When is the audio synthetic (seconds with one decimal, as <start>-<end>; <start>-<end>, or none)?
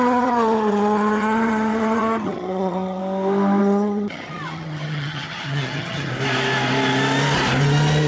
0.0-3.0; 3.6-6.1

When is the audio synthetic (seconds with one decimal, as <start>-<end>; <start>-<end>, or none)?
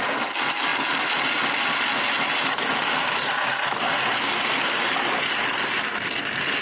none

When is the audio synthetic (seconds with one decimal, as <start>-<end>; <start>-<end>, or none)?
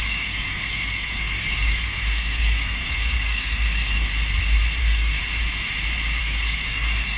0.0-4.1; 4.8-5.2; 6.2-7.2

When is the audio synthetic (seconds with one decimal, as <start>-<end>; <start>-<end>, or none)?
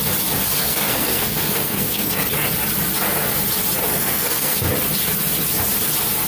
0.5-2.3; 3.9-4.7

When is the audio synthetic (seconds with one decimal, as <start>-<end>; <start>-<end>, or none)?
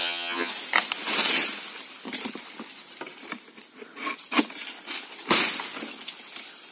0.0-0.5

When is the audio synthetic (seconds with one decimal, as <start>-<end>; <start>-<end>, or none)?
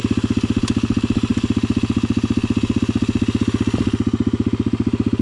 none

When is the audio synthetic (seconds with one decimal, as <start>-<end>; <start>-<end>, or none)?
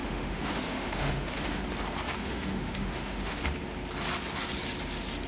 0.0-1.6; 2.2-3.4